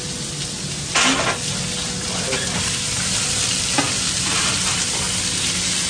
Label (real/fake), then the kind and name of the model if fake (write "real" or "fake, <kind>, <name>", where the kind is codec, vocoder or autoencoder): real